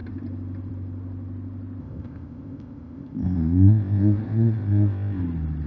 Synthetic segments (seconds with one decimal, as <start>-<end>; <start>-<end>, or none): 1.8-5.2